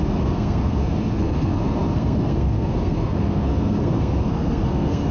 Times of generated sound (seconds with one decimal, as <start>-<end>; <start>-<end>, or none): 0.0-5.1